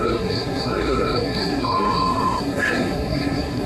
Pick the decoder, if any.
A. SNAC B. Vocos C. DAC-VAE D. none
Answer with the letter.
A